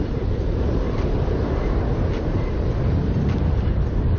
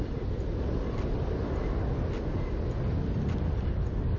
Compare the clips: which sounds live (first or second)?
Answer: second